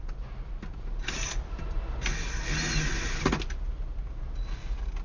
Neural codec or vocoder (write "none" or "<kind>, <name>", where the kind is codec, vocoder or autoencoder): none